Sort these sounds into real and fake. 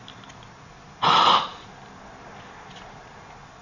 real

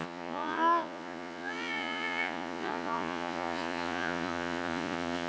fake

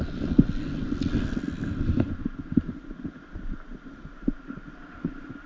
real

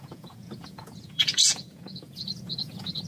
fake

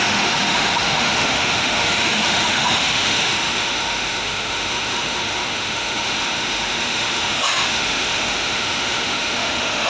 fake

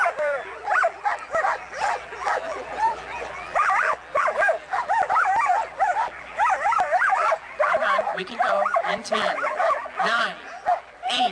fake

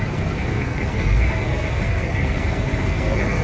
fake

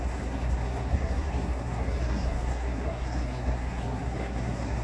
fake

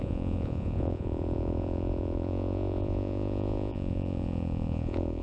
fake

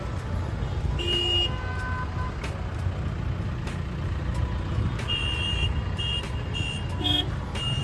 real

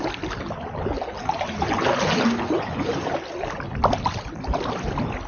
real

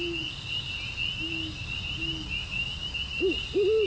real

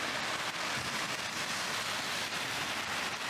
real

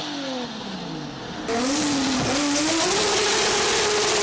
real